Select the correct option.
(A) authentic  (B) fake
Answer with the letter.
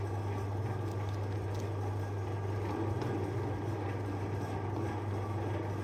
A